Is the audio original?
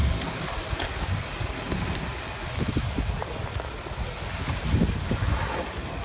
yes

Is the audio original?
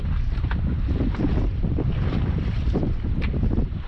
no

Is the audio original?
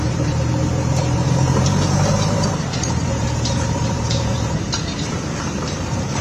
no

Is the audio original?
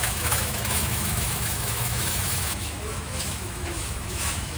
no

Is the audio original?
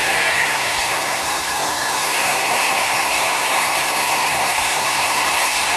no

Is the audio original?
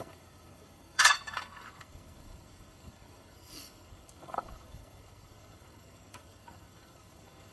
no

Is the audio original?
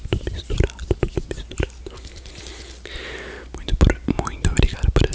yes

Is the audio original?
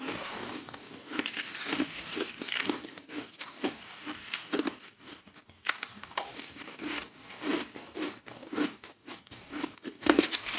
no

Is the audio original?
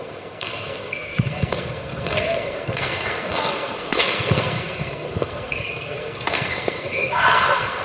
no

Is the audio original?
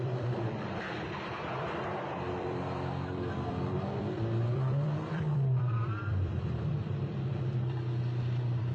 no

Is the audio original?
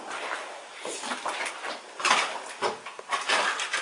yes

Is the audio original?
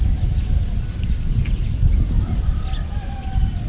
yes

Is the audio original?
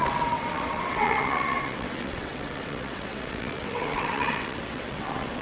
no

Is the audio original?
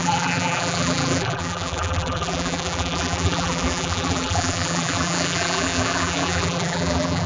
no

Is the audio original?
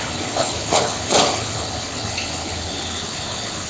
no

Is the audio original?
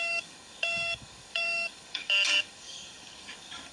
no